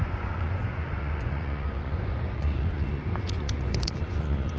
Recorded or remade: remade